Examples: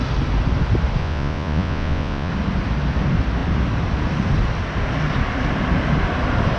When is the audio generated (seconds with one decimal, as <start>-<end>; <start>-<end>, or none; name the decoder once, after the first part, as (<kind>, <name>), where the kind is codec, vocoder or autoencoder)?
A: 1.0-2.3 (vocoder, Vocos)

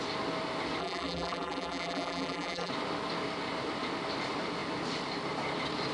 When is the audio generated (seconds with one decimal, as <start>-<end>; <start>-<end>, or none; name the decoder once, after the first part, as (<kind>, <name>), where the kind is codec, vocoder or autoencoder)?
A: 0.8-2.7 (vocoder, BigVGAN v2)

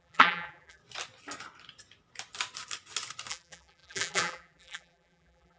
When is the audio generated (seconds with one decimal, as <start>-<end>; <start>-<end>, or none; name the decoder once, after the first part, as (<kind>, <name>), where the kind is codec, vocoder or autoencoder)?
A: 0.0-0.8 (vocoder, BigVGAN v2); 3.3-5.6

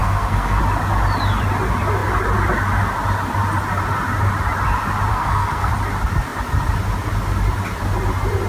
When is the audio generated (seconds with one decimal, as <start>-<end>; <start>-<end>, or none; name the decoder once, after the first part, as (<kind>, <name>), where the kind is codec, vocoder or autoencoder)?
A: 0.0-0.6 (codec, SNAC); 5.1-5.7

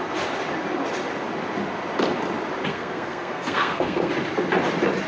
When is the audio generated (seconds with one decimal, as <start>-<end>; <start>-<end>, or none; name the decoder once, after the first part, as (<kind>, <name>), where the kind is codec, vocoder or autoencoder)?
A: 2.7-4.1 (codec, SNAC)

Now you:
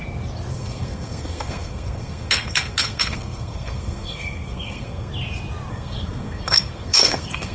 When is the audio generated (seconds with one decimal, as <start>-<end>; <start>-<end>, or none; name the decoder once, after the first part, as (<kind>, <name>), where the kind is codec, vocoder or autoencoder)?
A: 0.5-5.1 (codec, SNAC); 5.7-7.5

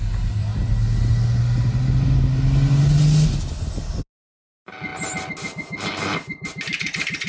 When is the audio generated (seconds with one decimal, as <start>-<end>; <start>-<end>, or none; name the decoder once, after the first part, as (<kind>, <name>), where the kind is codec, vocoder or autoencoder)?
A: none